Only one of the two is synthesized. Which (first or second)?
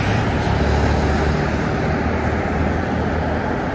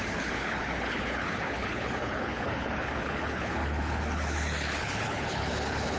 second